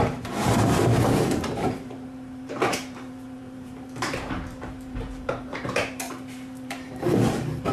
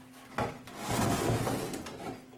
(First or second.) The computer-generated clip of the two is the first